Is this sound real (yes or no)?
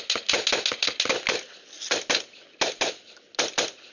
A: yes